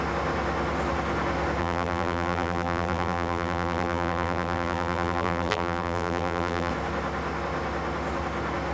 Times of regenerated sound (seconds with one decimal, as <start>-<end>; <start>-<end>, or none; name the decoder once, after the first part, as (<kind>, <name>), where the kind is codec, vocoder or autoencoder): 1.6-6.7 (vocoder, BigVGAN v2)